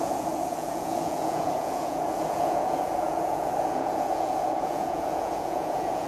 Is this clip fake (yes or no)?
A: yes